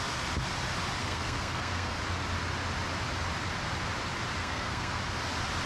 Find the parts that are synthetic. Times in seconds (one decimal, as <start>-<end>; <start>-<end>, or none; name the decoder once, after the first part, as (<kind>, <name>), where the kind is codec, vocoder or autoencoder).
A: 1.0-2.0 (codec, SNAC); 4.4-5.0